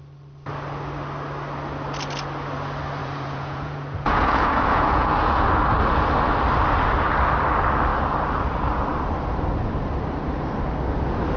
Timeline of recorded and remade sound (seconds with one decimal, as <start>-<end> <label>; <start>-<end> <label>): 0.0-3.0 recorded; 3.0-5.5 remade; 5.5-11.4 recorded